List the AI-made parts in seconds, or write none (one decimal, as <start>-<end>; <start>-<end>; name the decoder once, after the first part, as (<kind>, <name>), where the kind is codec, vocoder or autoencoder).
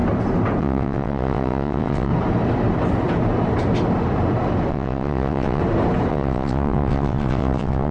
0.6-2.1 (vocoder, WaveNeXt); 4.7-5.6; 6.1-7.9